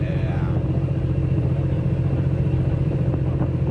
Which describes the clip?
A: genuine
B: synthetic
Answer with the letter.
B